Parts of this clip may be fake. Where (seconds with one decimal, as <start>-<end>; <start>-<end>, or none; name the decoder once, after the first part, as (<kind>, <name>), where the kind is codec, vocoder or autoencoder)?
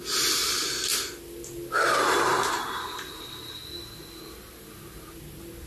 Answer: 0.9-3.5 (vocoder, BigVGAN v2)